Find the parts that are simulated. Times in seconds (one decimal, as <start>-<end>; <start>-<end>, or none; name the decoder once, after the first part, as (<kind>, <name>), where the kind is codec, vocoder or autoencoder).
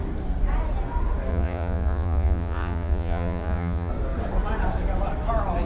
1.3-3.9 (vocoder, Vocos)